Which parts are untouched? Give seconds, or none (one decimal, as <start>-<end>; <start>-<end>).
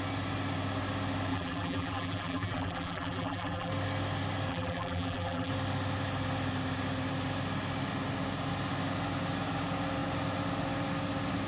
0.0-1.3; 3.7-4.5; 5.5-11.5